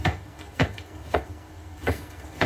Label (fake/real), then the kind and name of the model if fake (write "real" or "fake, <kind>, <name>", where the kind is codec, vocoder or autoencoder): fake, codec, SNAC